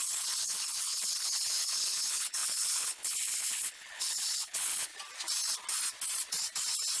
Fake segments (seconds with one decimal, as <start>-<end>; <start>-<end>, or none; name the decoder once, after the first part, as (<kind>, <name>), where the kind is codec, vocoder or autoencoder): 0.0-4.9 (codec, HILCodec)